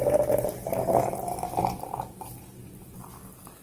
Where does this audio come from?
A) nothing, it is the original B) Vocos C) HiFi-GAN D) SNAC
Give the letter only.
A